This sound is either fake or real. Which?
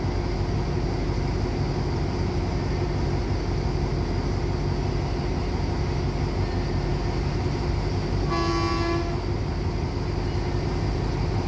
real